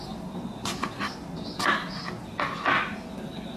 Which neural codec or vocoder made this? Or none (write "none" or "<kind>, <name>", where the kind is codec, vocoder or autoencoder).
none